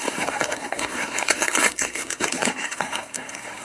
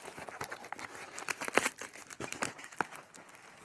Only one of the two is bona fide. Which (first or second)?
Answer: second